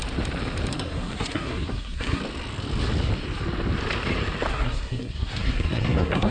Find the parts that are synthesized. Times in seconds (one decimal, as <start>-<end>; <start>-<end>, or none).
0.7-2.2; 4.5-6.3